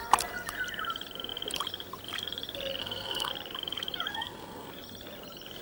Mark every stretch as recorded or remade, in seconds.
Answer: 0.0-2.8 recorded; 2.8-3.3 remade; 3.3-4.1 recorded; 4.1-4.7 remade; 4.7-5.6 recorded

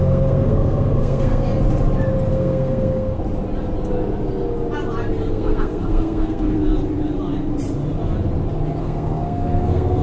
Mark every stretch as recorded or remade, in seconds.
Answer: 0.0-1.5 remade; 1.5-2.3 recorded; 2.3-3.2 remade; 3.2-5.3 recorded; 5.3-6.7 remade; 6.7-8.8 recorded; 8.8-10.0 remade

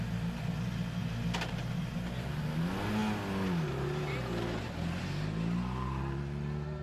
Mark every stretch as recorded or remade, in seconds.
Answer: 0.0-6.8 recorded

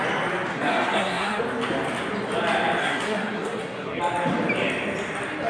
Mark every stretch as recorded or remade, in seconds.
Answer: 0.0-0.5 recorded; 0.5-1.4 remade; 1.4-2.8 recorded; 2.8-4.0 remade; 4.0-5.5 recorded

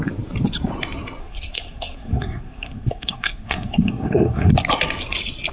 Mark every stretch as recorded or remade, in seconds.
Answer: 0.0-1.2 recorded; 1.2-4.5 remade; 4.5-5.5 recorded

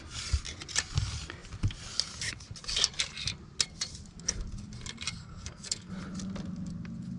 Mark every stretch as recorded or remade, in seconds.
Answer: 0.0-5.2 recorded; 5.2-5.9 remade; 5.9-7.2 recorded